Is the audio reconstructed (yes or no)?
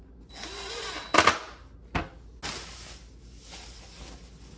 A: no